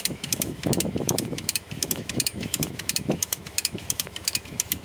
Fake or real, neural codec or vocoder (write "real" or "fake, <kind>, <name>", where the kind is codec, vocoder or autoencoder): fake, autoencoder, DAC-VAE